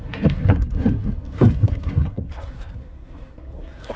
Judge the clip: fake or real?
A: fake